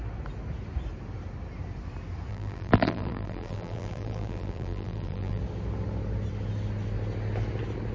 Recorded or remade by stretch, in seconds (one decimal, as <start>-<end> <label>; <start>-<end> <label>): 0.0-2.3 recorded; 2.3-5.4 remade; 5.4-7.9 recorded